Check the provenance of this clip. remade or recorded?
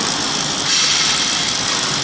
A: recorded